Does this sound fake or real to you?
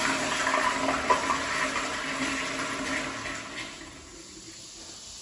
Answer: real